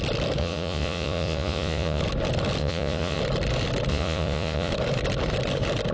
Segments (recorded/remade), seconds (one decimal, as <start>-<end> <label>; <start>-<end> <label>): 0.0-0.4 recorded; 0.4-2.0 remade; 2.0-2.6 recorded; 2.6-3.2 remade; 3.2-3.9 recorded; 3.9-4.7 remade; 4.7-5.9 recorded